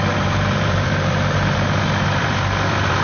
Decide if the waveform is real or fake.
fake